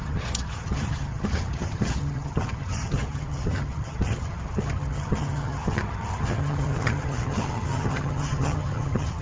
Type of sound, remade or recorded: remade